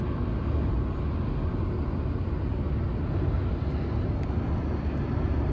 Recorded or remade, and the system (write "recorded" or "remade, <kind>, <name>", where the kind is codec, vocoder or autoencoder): recorded